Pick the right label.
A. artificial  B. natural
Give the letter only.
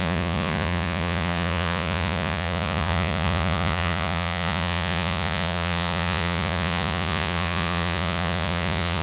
A